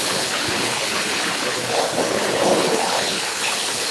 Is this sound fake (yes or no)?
yes